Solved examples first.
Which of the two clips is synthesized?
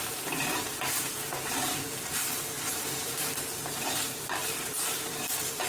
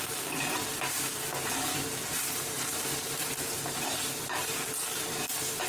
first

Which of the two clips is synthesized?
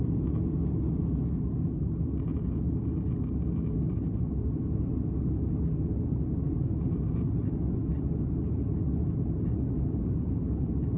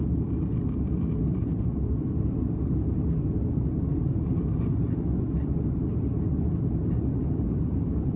second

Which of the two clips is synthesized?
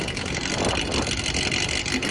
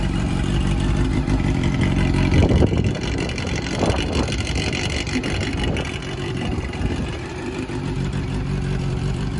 second